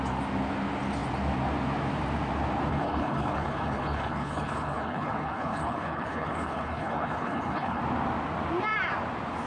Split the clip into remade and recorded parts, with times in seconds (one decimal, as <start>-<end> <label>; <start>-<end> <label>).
0.0-2.7 recorded; 2.7-7.8 remade; 7.8-9.5 recorded